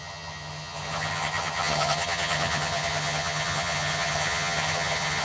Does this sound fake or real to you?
fake